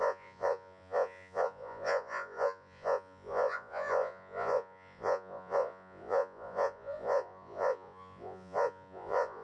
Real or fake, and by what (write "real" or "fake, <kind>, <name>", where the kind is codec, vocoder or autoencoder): fake, vocoder, Vocos